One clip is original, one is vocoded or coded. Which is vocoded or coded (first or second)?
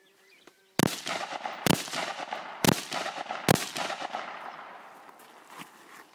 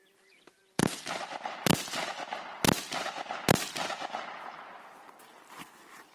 second